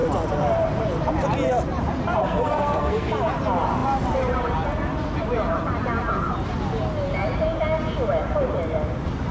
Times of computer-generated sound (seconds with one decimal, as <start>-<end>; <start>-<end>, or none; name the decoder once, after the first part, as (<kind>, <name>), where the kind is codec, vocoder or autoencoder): 2.2-3.1 (codec, SNAC)